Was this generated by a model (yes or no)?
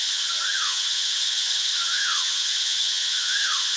yes